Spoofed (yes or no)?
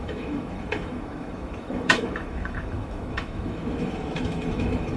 yes